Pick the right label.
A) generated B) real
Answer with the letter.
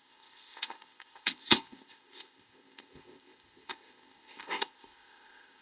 A